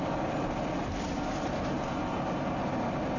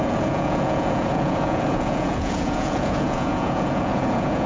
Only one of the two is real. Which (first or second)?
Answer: first